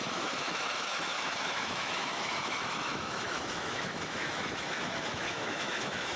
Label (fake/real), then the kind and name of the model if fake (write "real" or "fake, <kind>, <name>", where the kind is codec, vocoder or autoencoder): fake, autoencoder, DAC-VAE